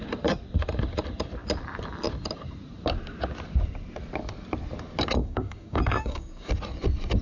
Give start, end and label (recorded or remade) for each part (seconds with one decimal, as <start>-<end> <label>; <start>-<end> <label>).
0.0-5.2 recorded; 5.2-6.5 remade; 6.5-7.2 recorded